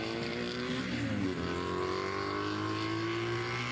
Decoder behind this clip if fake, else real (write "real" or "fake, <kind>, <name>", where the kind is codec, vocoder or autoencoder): real